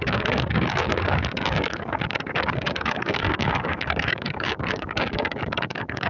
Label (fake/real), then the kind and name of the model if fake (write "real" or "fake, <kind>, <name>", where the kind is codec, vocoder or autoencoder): fake, codec, DAC